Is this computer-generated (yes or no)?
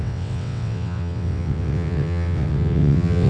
yes